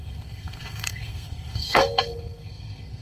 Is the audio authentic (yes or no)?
no